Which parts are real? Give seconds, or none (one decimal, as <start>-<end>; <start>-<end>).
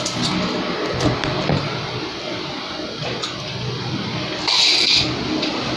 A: 0.0-5.8